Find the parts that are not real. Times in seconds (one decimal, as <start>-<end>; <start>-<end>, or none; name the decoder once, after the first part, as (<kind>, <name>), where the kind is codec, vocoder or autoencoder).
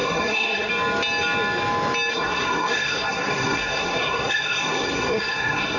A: 0.0-0.7 (codec, SNAC); 2.1-5.8